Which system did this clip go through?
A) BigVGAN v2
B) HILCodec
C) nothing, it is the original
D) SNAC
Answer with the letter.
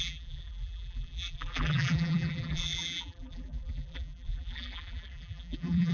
A